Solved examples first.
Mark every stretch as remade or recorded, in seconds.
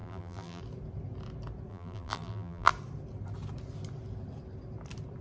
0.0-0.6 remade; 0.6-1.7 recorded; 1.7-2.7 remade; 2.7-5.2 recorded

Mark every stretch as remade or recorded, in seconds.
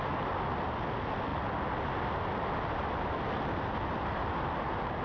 0.0-5.0 recorded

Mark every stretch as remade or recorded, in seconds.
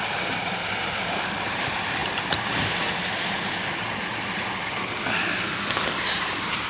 0.0-2.0 remade; 2.0-6.0 recorded; 6.0-6.7 remade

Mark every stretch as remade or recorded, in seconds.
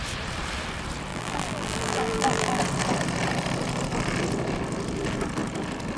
0.0-1.1 recorded; 1.1-2.6 remade; 2.6-6.0 recorded